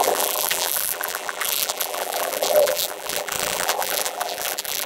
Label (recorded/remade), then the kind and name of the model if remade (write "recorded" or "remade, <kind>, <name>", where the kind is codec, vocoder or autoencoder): remade, vocoder, BigVGAN v2